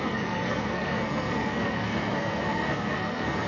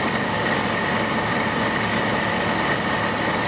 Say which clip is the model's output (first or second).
first